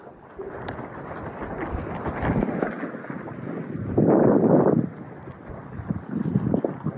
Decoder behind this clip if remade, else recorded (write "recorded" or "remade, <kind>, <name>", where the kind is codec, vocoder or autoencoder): recorded